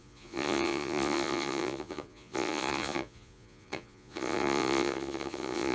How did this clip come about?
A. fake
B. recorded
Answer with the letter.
A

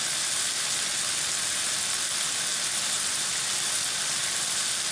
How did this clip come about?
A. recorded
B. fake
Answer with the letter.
A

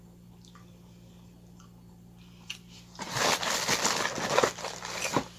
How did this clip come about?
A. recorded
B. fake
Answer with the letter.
A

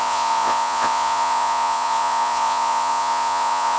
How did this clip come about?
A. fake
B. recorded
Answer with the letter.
A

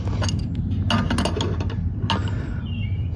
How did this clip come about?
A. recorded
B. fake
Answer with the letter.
A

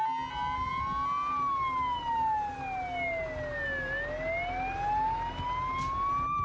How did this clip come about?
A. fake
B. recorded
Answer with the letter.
B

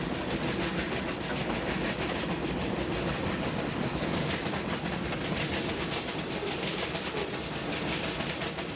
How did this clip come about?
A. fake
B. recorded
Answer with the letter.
B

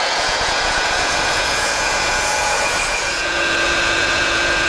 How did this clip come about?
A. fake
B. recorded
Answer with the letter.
A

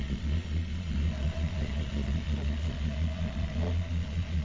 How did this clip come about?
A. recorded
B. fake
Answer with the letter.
B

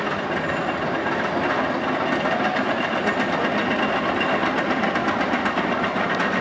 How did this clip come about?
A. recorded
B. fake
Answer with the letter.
A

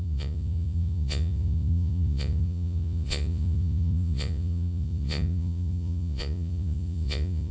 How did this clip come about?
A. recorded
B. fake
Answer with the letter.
B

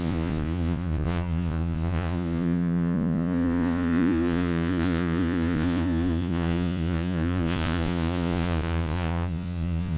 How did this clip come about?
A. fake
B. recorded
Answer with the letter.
A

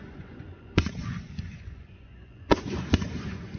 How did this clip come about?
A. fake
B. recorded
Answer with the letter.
A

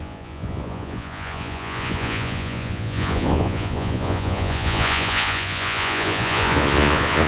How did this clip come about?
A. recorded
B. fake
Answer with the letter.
B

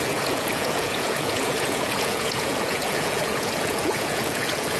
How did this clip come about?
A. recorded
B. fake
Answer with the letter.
B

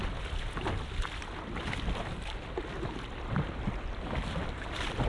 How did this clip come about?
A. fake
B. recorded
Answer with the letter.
B